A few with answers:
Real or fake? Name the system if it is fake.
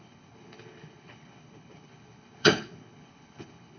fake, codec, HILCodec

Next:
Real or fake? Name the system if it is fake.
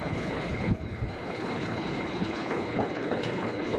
fake, codec, HILCodec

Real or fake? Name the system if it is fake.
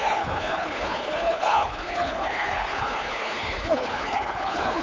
fake, codec, HILCodec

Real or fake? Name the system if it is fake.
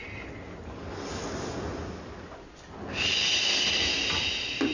real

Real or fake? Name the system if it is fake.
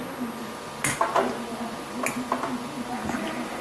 real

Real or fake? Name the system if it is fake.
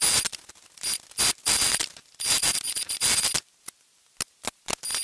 real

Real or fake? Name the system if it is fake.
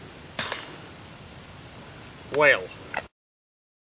real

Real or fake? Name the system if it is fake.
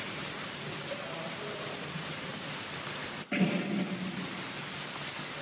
real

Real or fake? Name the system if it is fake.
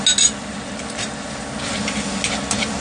real